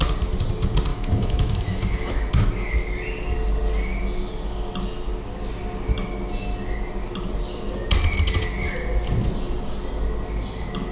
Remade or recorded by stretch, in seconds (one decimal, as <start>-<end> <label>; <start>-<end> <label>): 0.0-0.9 recorded; 0.9-2.3 remade; 2.3-10.9 recorded